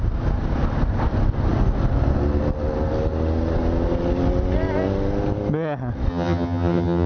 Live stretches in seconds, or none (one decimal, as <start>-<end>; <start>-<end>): 0.0-6.1